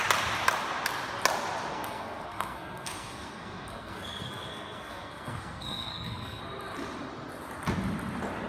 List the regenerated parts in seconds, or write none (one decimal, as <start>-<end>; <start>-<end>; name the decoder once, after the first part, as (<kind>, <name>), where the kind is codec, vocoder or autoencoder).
1.7-6.4 (codec, SNAC)